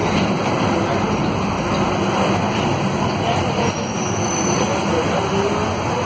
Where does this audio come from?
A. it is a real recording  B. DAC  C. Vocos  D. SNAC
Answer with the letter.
A